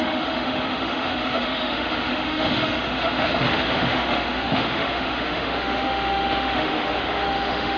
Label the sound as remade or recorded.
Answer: remade